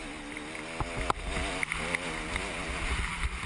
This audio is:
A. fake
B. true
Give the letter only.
B